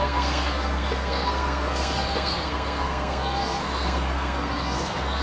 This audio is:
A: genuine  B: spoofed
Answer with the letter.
B